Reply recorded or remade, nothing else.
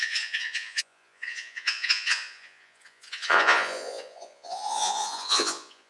remade